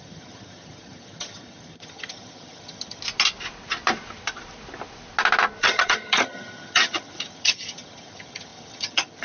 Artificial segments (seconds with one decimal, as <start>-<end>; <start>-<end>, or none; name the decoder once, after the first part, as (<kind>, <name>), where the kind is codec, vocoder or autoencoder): 0.0-3.0 (vocoder, HiFi-GAN); 5.6-9.2

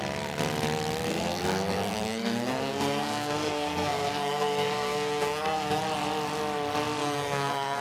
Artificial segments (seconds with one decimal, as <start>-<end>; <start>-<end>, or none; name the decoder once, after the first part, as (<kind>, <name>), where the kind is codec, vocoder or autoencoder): 1.1-5.8 (codec, SNAC); 7.0-7.8

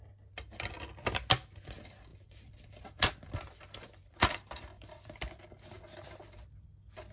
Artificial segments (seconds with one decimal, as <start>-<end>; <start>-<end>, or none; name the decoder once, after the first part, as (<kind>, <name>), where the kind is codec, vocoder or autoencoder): 2.1-5.4 (vocoder, BigVGAN v2)

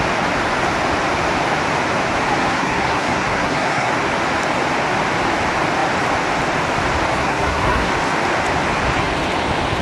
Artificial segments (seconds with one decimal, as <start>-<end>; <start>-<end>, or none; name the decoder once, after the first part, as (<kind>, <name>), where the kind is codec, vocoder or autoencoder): 2.4-3.9 (codec, SNAC); 7.1-7.9

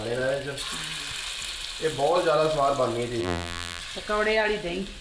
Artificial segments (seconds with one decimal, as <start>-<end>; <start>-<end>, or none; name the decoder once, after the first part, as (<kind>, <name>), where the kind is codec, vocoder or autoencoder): 3.2-3.8 (vocoder, BigVGAN v2)

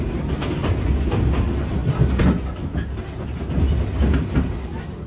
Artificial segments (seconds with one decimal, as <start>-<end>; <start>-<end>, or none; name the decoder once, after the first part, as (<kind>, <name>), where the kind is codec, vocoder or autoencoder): none

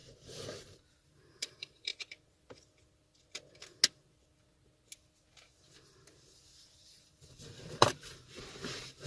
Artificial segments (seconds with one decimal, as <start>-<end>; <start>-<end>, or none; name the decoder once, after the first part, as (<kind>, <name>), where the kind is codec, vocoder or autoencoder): 0.0-1.9 (vocoder, BigVGAN v2); 6.6-9.1